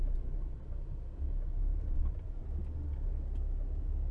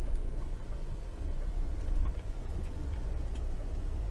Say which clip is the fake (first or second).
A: second